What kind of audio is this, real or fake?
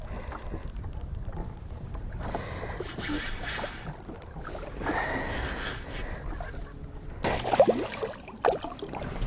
real